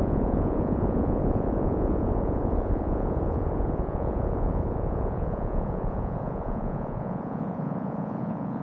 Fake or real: fake